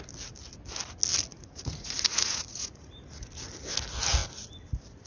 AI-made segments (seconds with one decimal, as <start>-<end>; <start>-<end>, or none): 1.3-2.9